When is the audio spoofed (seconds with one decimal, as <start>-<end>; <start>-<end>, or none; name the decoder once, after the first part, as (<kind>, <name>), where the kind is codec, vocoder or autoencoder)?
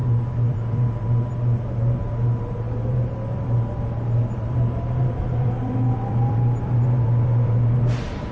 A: 0.0-8.3 (vocoder, BigVGAN v2)